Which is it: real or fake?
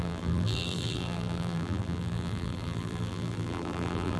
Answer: fake